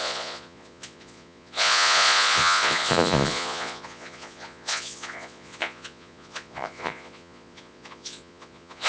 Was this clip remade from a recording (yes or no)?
yes